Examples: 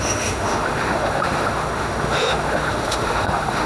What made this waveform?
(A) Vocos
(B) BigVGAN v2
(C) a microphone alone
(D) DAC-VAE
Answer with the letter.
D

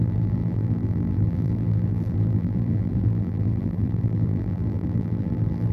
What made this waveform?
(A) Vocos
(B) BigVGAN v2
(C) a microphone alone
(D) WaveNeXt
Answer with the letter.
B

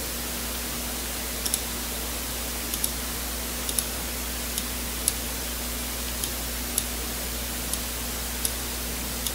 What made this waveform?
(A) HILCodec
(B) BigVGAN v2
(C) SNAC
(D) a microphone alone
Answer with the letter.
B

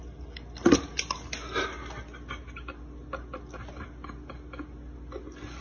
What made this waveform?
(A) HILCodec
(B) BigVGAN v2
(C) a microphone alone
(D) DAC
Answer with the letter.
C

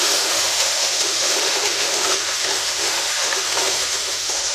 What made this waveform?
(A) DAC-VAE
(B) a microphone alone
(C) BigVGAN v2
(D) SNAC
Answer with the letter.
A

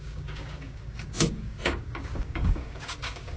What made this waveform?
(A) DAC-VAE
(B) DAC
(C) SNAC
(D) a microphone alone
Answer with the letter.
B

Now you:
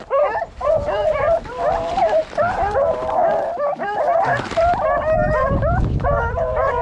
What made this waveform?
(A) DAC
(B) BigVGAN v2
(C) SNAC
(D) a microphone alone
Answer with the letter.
B